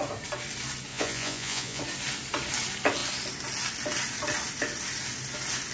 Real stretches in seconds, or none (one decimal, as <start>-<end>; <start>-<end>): 0.0-0.9; 1.8-5.7